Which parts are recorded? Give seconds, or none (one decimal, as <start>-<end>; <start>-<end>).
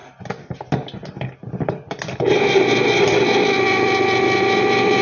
0.0-5.0